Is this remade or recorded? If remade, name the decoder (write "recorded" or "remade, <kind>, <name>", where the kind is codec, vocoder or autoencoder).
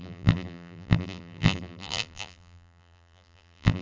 remade, vocoder, BigVGAN v2